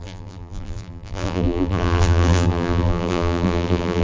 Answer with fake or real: fake